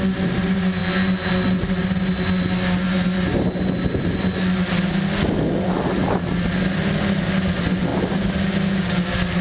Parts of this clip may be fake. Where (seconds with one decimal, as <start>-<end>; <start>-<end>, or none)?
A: none